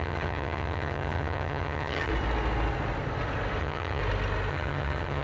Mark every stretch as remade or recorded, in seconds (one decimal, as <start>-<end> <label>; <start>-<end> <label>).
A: 0.0-2.1 remade; 2.1-3.6 recorded; 3.6-4.0 remade; 4.0-4.5 recorded; 4.5-5.2 remade